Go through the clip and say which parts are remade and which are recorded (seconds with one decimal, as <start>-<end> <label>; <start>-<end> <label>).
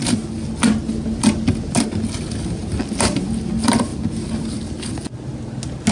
0.0-5.9 recorded